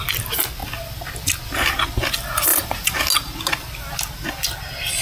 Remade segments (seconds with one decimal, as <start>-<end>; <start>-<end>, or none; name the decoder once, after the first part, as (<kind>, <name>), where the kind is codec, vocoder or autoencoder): 2.5-3.1 (vocoder, BigVGAN v2)